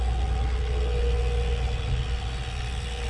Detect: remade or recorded recorded